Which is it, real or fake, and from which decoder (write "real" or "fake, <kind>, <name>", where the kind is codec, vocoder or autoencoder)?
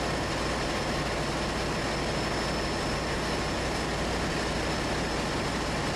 real